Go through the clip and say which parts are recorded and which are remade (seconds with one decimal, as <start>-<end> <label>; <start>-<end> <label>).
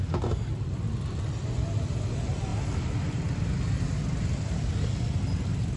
0.0-5.8 recorded